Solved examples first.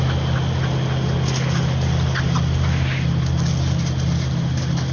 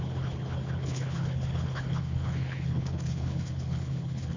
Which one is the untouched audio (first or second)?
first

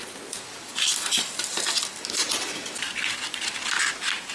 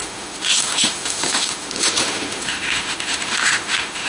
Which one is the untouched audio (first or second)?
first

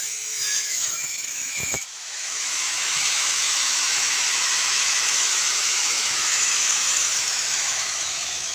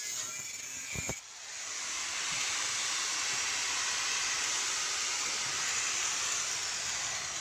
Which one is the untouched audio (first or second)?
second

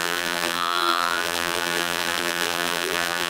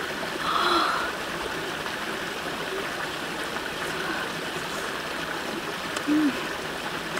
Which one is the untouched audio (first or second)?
second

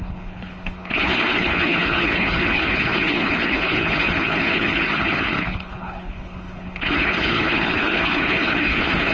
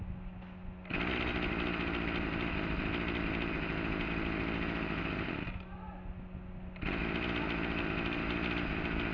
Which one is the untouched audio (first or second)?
second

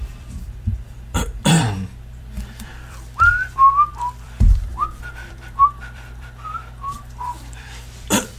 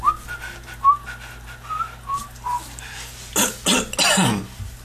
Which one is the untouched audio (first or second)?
second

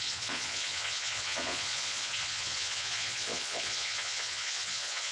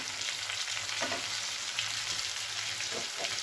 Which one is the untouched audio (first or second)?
second